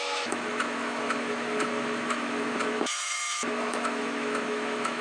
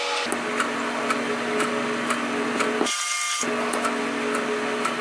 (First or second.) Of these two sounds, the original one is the second